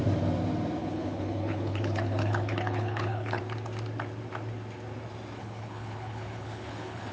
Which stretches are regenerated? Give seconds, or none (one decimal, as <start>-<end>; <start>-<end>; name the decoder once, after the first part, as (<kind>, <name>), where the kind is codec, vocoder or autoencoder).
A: 0.8-3.4 (codec, HILCodec); 5.4-7.1